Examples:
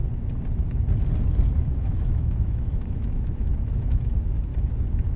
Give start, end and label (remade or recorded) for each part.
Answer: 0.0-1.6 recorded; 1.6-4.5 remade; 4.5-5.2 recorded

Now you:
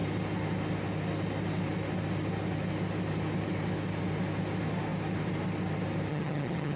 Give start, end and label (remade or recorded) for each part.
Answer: 0.0-6.1 recorded; 6.1-6.8 remade

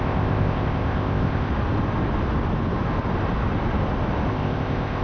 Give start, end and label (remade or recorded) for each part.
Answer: 0.0-1.5 remade; 1.5-4.3 recorded; 4.3-5.0 remade